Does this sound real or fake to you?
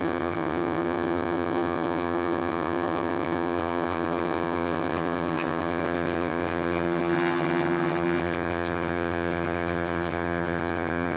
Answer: fake